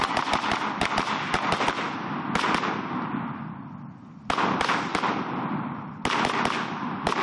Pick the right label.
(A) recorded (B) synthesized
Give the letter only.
A